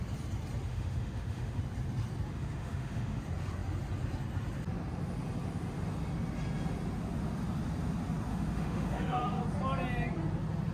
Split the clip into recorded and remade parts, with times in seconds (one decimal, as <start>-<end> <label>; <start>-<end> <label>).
0.0-0.7 recorded; 0.7-1.6 remade; 1.6-2.3 recorded; 2.3-3.2 remade; 3.2-8.3 recorded; 8.3-9.4 remade; 9.4-10.7 recorded